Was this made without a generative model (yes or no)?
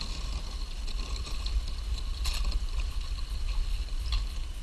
yes